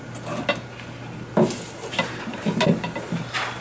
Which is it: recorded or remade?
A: recorded